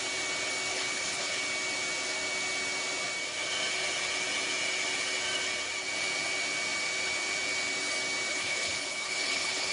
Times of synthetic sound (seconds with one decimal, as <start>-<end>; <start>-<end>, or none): 0.7-1.4; 8.3-9.7